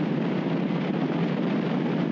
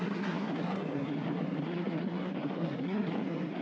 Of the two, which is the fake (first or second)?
second